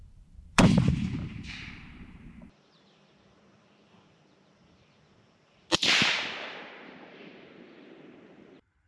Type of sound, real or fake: fake